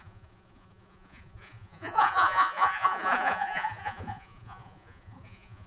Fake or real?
fake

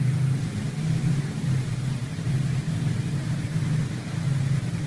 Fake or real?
real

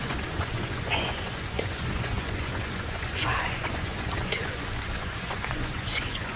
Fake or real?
fake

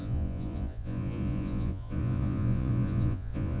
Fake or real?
fake